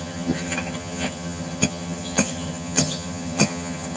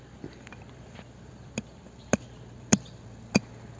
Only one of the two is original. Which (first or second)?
second